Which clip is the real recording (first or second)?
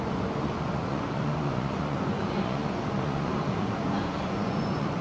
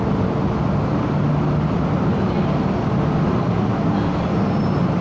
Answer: second